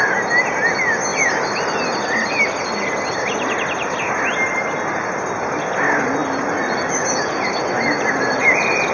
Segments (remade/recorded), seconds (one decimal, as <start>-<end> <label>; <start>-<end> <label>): 0.0-8.9 recorded